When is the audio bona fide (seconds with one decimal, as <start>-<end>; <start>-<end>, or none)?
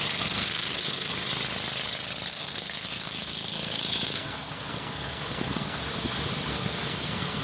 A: 1.1-2.3; 5.8-6.5